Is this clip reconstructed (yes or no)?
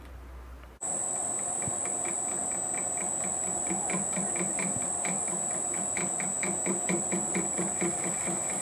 no